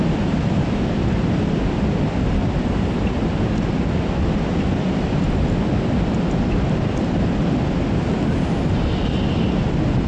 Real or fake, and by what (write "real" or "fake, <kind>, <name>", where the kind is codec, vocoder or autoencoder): real